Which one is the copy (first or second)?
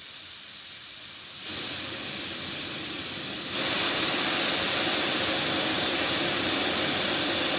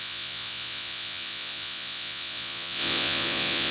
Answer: second